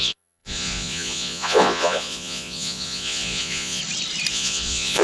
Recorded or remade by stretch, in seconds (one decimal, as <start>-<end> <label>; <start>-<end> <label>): 0.0-3.8 remade; 3.8-4.3 recorded; 4.3-5.0 remade